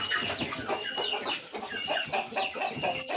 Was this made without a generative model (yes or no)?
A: yes